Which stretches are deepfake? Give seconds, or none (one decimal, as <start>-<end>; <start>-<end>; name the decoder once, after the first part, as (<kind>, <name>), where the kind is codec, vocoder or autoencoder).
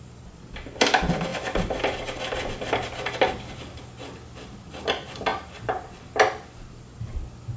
none